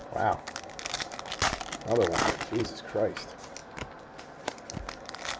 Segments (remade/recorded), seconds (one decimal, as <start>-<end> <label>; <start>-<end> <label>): 0.0-5.4 recorded